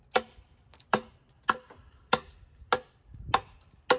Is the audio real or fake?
real